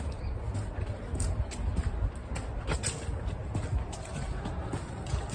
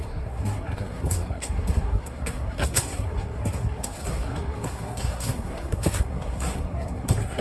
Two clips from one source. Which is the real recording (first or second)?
first